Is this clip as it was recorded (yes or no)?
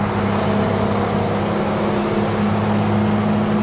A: yes